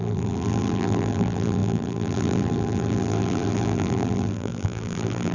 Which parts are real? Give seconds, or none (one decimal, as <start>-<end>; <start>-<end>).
none